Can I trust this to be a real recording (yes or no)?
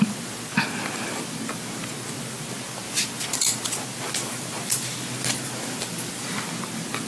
yes